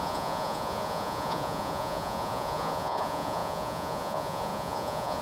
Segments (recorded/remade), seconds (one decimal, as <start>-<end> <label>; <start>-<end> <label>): 0.0-5.2 remade